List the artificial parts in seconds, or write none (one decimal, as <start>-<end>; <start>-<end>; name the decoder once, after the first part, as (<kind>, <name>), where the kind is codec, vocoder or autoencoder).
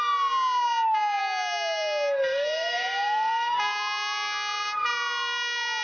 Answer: 1.2-3.7 (codec, DAC)